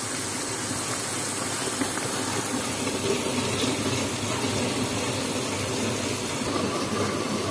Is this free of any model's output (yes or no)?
yes